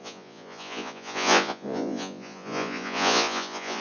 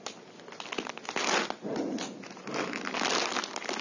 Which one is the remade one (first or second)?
first